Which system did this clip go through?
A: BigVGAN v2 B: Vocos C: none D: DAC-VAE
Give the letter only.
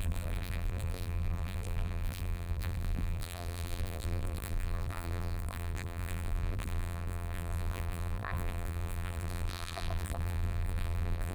A